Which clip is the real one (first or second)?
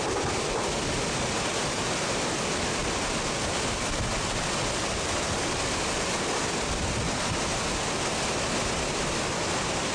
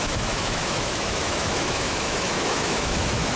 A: first